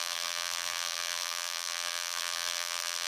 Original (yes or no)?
no